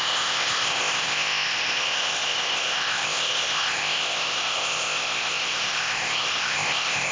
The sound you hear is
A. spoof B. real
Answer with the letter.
A